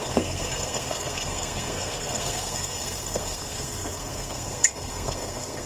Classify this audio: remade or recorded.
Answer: remade